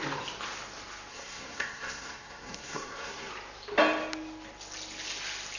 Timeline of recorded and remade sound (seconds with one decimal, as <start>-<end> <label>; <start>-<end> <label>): 0.0-1.1 recorded; 1.1-3.3 remade; 3.3-5.6 recorded